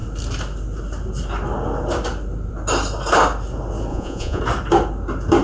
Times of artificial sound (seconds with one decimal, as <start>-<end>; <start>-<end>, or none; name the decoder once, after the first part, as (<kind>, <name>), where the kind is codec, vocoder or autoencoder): 3.9-4.4 (vocoder, Vocos)